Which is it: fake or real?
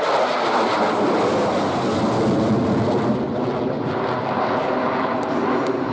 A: real